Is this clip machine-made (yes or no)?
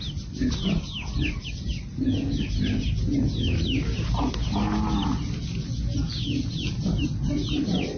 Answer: no